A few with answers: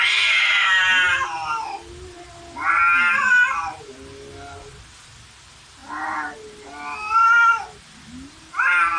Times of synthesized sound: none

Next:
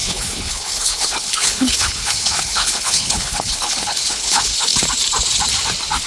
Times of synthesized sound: 0.0-4.7 (codec, HILCodec)